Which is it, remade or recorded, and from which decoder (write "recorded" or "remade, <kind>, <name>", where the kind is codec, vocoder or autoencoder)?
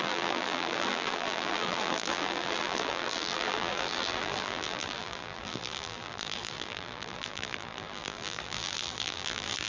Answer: remade, vocoder, BigVGAN v2